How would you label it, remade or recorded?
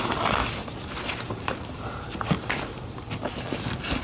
recorded